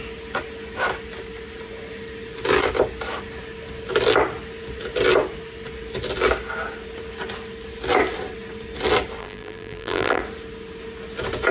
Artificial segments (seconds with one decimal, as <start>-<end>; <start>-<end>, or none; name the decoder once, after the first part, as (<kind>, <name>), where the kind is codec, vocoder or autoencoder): 9.2-10.2 (vocoder, BigVGAN v2)